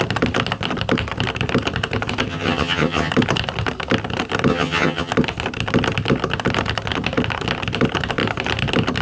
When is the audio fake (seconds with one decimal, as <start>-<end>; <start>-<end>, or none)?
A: 2.3-3.1; 4.5-5.1